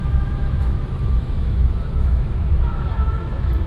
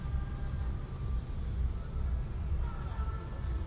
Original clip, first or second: second